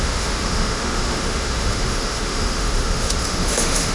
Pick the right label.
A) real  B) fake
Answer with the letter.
B